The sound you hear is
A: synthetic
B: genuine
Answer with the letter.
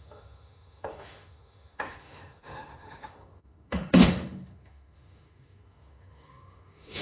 A